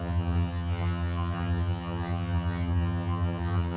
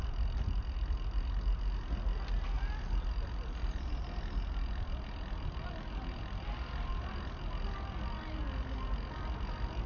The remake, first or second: first